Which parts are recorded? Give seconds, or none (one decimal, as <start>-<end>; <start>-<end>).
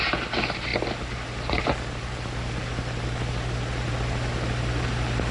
0.0-5.3